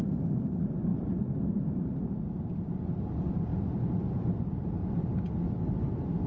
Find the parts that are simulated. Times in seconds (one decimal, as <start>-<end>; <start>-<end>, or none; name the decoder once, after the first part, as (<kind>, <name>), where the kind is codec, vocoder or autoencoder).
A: 0.9-1.8 (vocoder, BigVGAN v2)

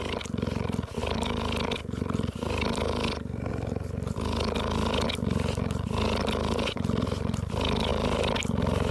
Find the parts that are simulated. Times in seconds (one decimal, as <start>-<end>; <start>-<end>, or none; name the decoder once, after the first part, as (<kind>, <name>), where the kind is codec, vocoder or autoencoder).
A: none